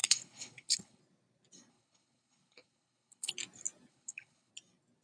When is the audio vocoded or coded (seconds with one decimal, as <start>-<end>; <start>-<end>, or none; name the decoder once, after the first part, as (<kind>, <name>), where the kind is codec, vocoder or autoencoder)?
0.0-1.0 (codec, HILCodec); 1.7-3.3; 3.9-4.5